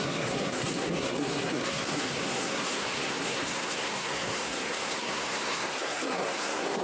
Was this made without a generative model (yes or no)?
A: no